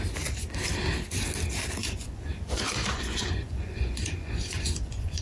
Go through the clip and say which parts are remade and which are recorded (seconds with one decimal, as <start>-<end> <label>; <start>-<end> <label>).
0.0-1.8 recorded; 1.8-5.2 remade